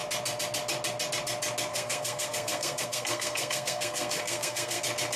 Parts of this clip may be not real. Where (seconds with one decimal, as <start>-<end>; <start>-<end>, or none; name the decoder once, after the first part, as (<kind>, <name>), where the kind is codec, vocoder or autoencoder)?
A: 1.7-4.8 (codec, SNAC)